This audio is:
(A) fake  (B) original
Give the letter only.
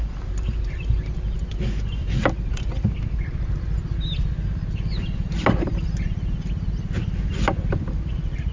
B